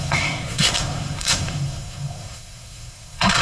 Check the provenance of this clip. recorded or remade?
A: remade